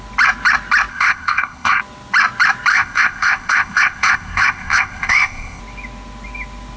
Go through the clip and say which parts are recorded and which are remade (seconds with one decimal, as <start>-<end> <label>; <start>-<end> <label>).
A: 0.0-0.9 recorded; 0.9-1.8 remade; 1.8-2.7 recorded; 2.7-5.6 remade; 5.6-6.8 recorded